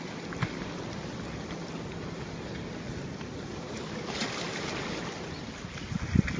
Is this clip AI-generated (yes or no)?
no